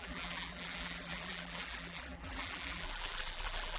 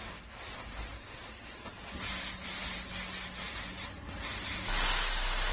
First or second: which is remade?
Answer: first